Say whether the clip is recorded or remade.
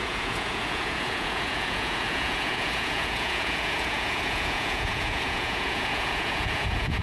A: remade